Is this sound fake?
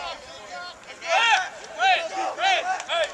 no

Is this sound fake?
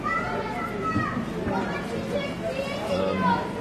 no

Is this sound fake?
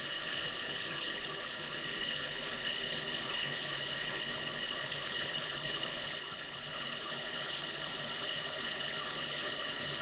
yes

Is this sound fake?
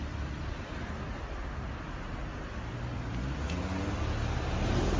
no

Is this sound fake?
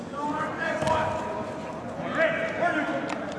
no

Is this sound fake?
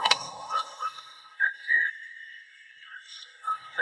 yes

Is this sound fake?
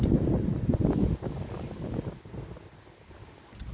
no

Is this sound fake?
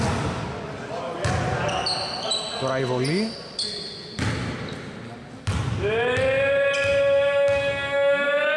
no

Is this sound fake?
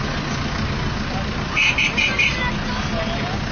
no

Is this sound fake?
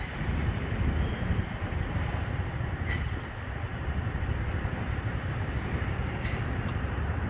no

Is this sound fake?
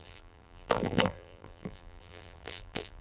yes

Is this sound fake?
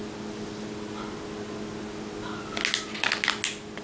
no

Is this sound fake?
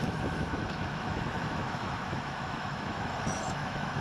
yes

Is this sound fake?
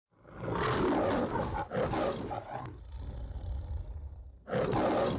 no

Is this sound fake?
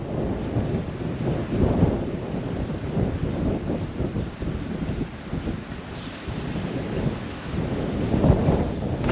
no